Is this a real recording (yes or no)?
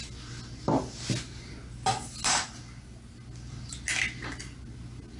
yes